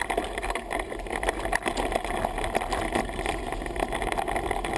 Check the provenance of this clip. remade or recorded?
recorded